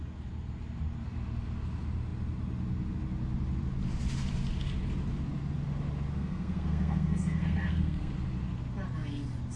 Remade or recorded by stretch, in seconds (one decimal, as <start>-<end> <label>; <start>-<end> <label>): 0.0-6.2 recorded; 6.2-8.1 remade; 8.1-9.6 recorded